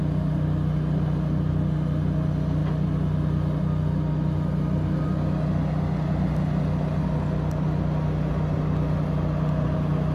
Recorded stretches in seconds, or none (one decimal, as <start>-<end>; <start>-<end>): 0.0-10.1